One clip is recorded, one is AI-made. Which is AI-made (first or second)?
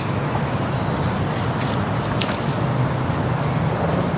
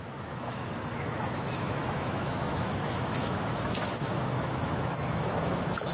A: second